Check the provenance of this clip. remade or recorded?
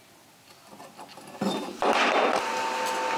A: recorded